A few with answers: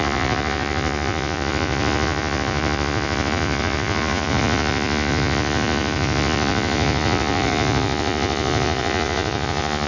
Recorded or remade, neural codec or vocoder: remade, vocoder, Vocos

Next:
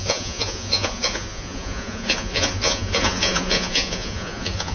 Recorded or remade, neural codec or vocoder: remade, vocoder, Vocos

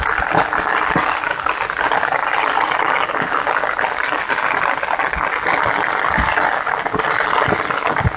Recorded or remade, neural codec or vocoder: recorded